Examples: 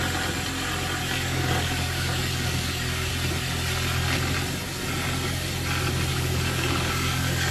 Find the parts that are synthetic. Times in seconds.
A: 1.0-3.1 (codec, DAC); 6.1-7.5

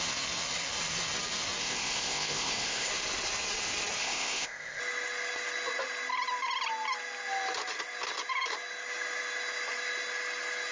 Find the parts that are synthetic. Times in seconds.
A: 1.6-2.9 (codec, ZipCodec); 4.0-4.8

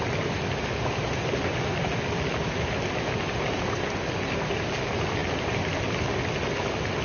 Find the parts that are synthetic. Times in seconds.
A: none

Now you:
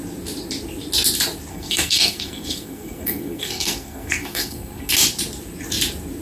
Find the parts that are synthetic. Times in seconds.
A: 1.5-4.9 (codec, SNAC)